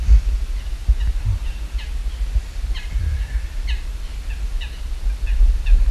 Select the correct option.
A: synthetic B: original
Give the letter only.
B